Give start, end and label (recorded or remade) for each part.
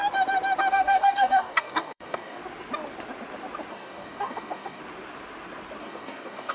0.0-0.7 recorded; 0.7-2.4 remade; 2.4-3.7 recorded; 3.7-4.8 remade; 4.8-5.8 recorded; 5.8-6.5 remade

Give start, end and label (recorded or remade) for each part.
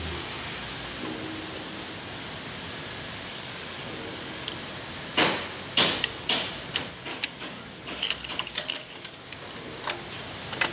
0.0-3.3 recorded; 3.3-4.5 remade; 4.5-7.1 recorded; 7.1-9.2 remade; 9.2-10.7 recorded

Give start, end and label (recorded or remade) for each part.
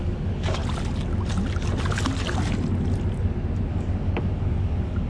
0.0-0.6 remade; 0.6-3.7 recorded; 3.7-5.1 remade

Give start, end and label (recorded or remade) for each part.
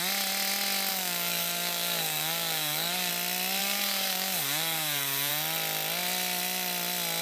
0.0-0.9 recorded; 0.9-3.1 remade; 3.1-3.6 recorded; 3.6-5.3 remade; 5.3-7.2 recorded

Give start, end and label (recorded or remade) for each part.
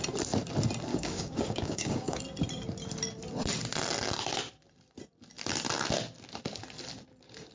0.0-0.9 recorded; 0.9-2.2 remade; 2.2-7.5 recorded